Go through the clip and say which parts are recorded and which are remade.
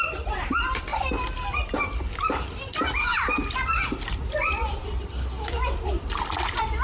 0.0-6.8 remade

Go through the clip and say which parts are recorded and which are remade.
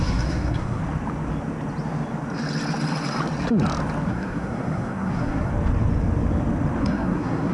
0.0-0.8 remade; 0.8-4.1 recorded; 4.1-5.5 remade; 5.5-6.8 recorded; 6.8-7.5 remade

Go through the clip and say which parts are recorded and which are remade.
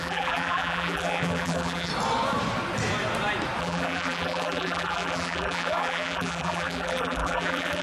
0.0-1.9 remade; 1.9-3.6 recorded; 3.6-7.8 remade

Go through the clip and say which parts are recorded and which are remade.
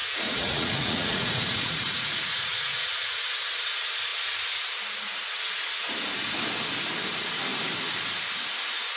0.0-3.2 remade; 3.2-9.0 recorded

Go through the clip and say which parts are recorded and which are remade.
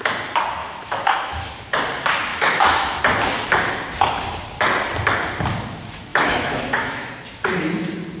0.0-0.6 recorded; 0.6-1.5 remade; 1.5-2.3 recorded; 2.3-3.0 remade; 3.0-6.1 recorded; 6.1-7.1 remade; 7.1-8.2 recorded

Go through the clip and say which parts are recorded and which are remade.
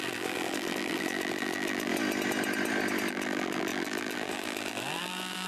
0.0-1.9 remade; 1.9-3.1 recorded; 3.1-5.5 remade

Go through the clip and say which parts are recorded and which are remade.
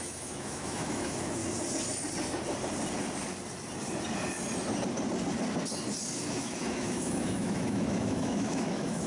0.0-1.4 remade; 1.4-6.3 recorded; 6.3-9.1 remade